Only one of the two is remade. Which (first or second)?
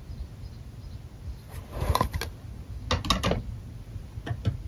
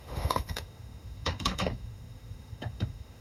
second